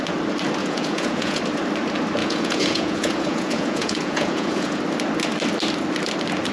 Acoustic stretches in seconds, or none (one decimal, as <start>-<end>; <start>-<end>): 0.0-0.6; 1.4-2.2; 4.8-6.5